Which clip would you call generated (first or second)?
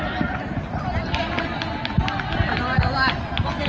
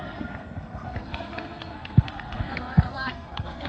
second